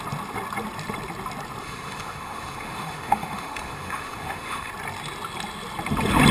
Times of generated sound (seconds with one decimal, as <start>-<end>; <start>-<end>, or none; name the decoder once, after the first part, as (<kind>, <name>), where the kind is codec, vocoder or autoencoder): 1.6-4.7 (autoencoder, DAC-VAE)